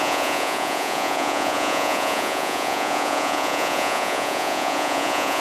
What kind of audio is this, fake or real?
fake